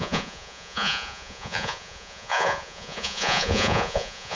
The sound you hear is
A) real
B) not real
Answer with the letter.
B